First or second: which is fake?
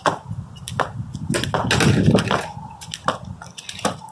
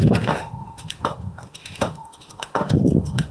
second